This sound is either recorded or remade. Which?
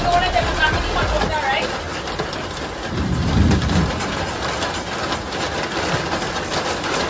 recorded